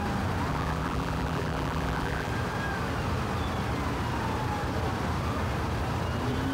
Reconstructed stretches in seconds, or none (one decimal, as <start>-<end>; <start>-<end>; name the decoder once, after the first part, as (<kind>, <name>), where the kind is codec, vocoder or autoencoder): 0.5-2.3 (vocoder, BigVGAN v2)